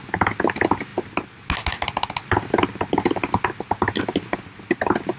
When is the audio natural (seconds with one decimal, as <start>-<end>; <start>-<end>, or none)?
0.0-5.2

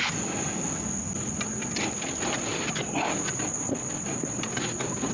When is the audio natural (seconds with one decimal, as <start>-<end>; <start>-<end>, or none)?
0.0-5.1